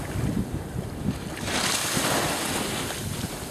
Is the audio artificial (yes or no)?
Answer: no